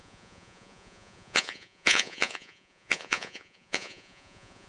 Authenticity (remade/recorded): remade